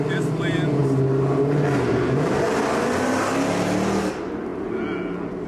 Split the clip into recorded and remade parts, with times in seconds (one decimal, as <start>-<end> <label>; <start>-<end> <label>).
0.0-5.5 recorded